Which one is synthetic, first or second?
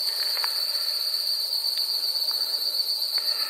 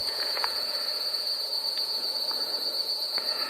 second